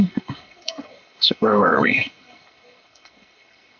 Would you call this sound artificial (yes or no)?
yes